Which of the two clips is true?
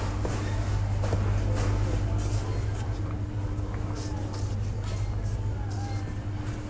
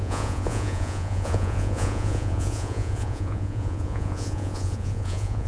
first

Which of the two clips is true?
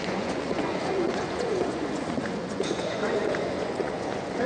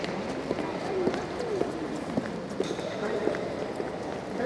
second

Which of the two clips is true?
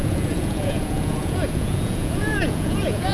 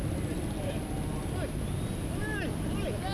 second